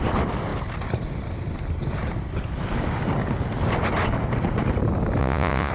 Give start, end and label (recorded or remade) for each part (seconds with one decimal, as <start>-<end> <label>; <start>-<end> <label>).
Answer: 0.0-5.2 recorded; 5.2-5.7 remade